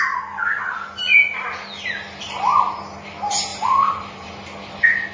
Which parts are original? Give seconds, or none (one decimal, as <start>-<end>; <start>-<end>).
0.0-3.5; 4.3-5.1